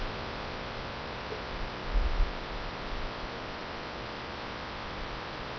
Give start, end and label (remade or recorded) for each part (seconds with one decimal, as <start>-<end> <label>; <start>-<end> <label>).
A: 0.0-5.6 recorded